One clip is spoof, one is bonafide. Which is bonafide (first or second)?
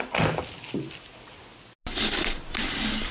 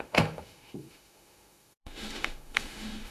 first